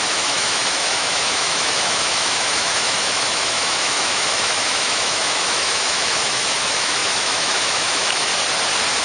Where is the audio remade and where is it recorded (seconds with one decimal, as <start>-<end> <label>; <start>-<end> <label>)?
0.0-8.3 remade; 8.3-9.0 recorded